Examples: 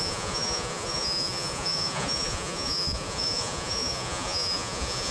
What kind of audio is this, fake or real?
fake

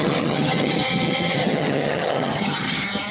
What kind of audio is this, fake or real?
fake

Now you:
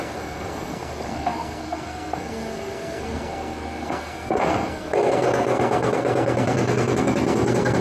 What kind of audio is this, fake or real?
fake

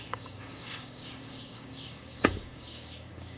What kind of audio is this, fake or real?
fake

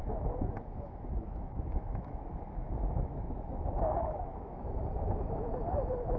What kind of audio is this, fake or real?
fake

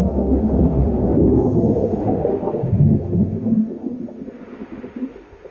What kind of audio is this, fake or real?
fake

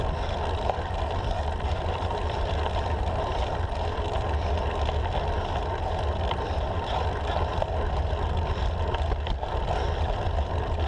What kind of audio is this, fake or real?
real